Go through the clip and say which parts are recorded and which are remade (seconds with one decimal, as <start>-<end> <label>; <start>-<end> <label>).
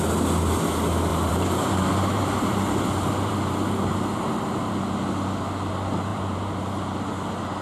0.0-1.1 recorded; 1.1-4.7 remade; 4.7-6.1 recorded; 6.1-6.8 remade; 6.8-7.6 recorded